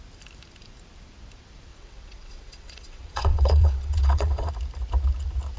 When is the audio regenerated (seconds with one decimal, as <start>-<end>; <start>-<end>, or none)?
1.7-4.5